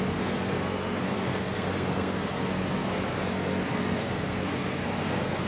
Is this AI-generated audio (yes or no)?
yes